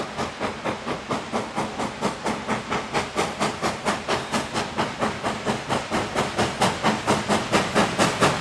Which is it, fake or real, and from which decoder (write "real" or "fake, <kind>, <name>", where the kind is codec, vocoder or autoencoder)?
real